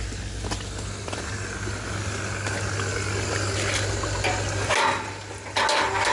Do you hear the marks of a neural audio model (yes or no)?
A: no